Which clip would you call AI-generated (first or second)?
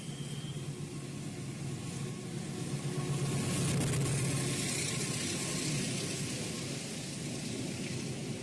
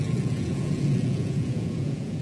second